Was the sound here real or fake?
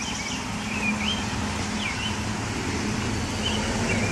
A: real